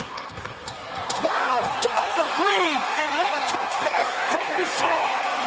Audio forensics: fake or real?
fake